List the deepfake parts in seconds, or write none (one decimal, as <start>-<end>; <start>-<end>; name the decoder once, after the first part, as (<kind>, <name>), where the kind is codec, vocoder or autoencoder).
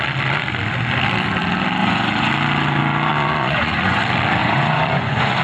1.8-2.3 (vocoder, Vocos); 3.1-4.0; 4.4-5.4